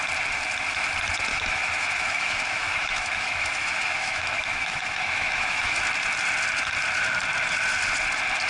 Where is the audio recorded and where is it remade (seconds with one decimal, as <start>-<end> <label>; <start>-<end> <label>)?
0.0-1.3 recorded; 1.3-5.8 remade; 5.8-8.5 recorded